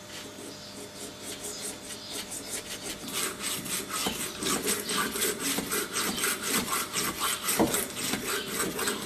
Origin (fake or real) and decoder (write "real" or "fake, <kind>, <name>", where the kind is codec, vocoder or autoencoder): real